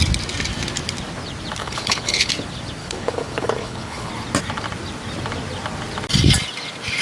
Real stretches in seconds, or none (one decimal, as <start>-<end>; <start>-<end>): 0.0-1.6; 2.3-2.8; 4.1-7.0